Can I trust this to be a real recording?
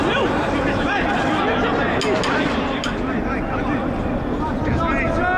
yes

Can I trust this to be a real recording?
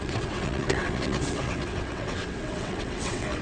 no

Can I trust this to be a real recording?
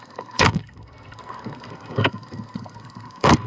no